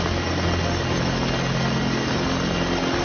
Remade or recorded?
recorded